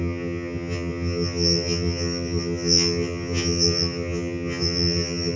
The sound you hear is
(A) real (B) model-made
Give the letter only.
B